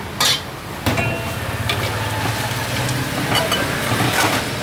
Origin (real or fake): real